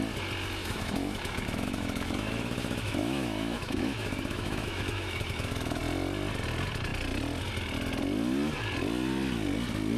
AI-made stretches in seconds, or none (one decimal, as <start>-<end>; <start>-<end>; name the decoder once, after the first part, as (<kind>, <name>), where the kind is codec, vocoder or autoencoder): 0.6-5.8 (autoencoder, DAC-VAE)